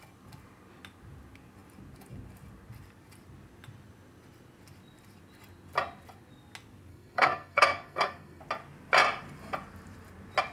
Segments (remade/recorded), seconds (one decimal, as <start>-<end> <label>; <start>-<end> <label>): 0.0-6.9 recorded; 6.9-8.4 remade; 8.4-10.5 recorded

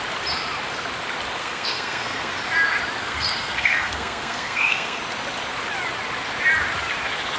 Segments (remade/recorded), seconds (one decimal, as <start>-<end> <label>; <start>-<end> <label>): 0.0-1.4 recorded; 1.4-2.3 remade; 2.3-3.0 recorded; 3.0-5.0 remade; 5.0-7.4 recorded